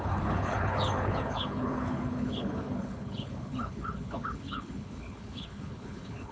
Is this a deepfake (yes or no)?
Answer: yes